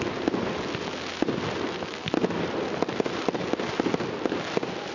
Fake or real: real